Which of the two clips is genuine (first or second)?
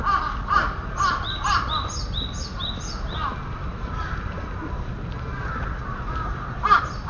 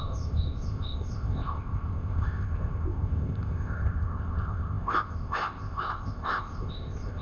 first